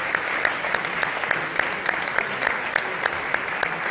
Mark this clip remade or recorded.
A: recorded